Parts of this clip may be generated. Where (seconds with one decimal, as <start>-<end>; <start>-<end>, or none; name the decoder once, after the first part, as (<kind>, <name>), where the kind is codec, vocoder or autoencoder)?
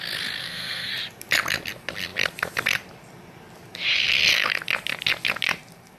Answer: 0.4-0.9 (codec, SNAC)